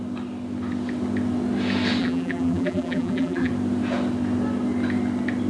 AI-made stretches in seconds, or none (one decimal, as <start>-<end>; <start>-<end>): 2.0-3.5